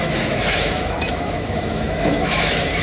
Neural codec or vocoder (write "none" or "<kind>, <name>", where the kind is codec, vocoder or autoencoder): autoencoder, DAC-VAE